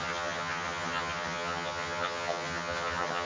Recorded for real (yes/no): no